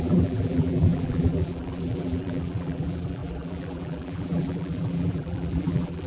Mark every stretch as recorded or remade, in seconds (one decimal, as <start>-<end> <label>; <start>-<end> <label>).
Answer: 0.0-6.1 remade